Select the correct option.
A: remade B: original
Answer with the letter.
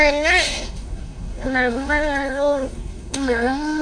A